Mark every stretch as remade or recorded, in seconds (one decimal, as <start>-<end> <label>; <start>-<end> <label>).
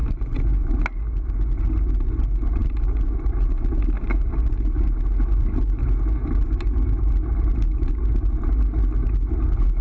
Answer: 0.0-9.8 recorded